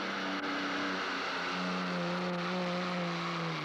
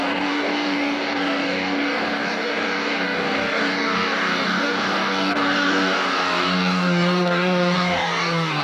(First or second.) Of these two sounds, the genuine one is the first